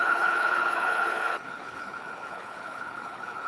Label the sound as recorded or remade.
remade